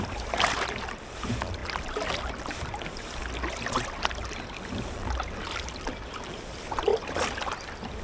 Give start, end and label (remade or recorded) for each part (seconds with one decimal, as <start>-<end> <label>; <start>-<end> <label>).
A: 0.0-8.0 recorded